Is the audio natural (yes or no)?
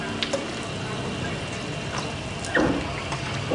yes